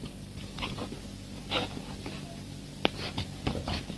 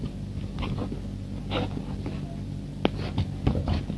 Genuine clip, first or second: second